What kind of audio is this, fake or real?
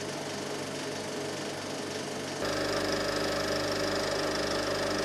real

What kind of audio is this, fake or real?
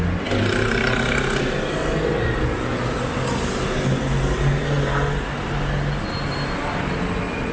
real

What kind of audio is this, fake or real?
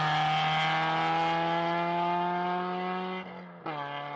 real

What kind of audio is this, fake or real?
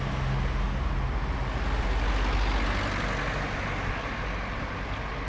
real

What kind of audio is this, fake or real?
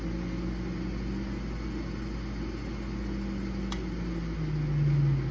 real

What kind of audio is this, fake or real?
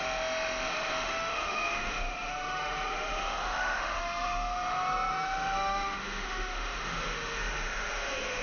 fake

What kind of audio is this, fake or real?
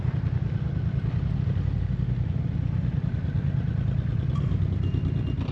real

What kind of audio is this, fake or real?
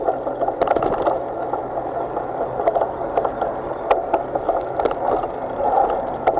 real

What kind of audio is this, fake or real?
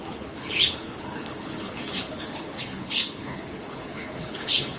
fake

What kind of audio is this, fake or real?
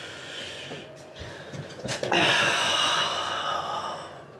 fake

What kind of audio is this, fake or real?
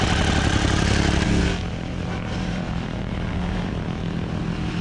real